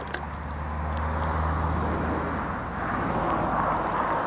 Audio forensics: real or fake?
real